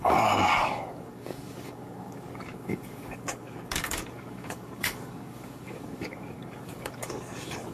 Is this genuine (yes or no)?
no